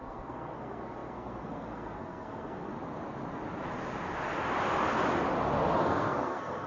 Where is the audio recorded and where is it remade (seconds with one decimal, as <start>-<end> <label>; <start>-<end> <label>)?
0.0-2.7 remade; 2.7-5.8 recorded; 5.8-6.7 remade